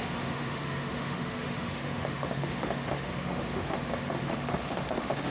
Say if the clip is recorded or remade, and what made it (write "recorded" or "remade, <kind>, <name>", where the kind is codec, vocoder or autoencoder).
remade, autoencoder, DAC-VAE